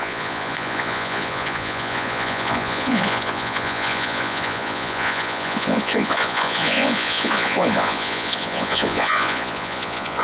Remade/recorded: remade